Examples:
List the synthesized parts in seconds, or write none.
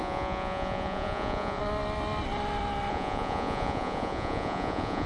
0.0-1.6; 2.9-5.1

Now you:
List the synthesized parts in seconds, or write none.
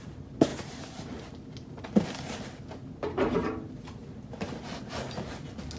4.0-4.9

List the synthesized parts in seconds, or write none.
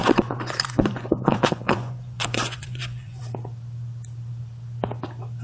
0.0-3.2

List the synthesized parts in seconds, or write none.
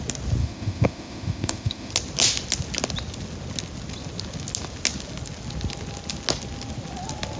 0.4-1.9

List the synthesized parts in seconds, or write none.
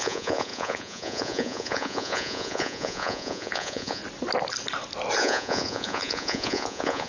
0.0-4.0; 5.2-7.1